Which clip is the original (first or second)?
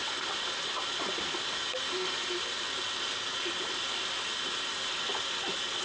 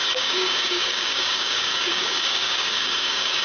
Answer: first